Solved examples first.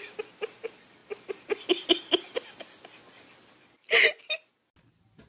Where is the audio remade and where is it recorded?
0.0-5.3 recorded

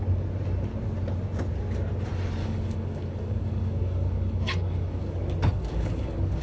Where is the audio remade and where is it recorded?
0.0-2.4 recorded; 2.4-6.4 remade

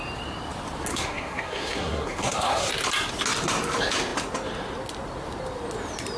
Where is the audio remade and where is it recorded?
0.0-0.9 recorded; 0.9-2.7 remade; 2.7-6.2 recorded